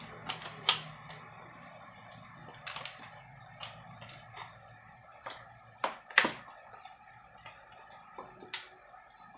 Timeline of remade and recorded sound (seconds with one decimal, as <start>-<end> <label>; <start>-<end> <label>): 0.0-5.0 recorded; 5.0-5.6 remade; 5.6-9.4 recorded